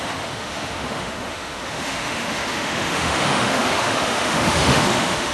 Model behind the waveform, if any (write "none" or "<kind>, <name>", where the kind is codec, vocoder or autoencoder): autoencoder, DAC-VAE